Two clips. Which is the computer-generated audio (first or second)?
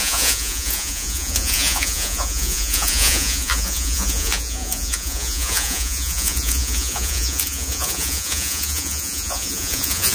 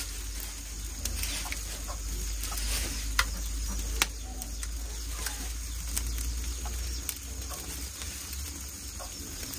first